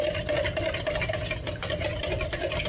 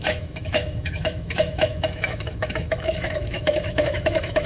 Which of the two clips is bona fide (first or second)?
first